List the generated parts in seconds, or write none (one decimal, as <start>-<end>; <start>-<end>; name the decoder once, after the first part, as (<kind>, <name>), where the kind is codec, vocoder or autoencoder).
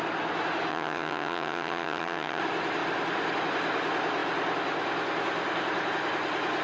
0.7-2.4 (vocoder, HiFi-GAN)